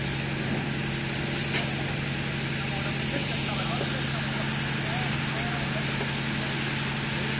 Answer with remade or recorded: recorded